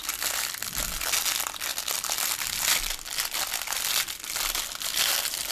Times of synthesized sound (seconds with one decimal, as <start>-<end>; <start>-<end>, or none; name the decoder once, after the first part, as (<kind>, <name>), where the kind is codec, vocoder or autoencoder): none